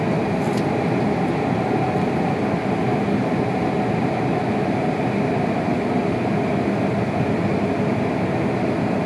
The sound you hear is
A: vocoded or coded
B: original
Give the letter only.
B